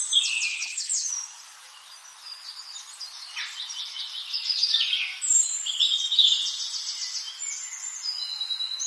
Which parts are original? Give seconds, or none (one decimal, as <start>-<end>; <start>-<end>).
0.0-0.5; 1.1-8.9